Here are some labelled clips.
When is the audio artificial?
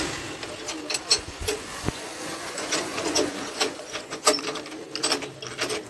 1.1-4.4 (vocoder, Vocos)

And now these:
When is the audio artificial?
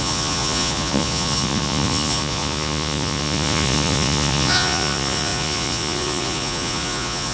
0.0-7.3 (vocoder, Vocos)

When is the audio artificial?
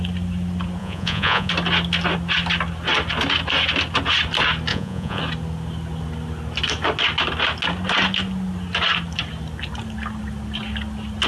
0.8-1.5 (vocoder, Vocos); 4.7-5.2